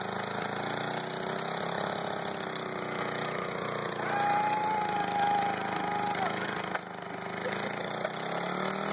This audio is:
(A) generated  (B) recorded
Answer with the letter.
B